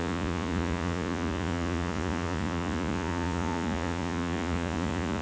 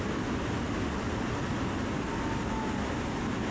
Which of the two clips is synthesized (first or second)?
first